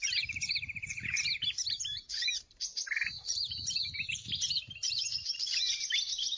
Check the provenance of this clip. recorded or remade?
remade